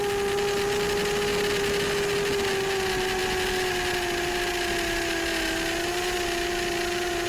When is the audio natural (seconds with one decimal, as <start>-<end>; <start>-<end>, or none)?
0.0-7.3